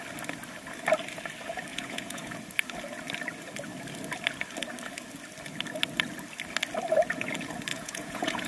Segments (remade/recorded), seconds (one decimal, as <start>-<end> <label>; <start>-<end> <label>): 0.0-1.7 recorded; 1.7-2.3 remade; 2.3-7.7 recorded; 7.7-8.5 remade